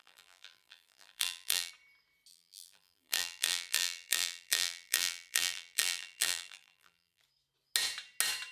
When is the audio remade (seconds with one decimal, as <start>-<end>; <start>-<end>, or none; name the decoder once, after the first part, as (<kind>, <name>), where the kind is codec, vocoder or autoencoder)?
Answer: 0.0-1.7 (vocoder, BigVGAN v2); 2.3-7.2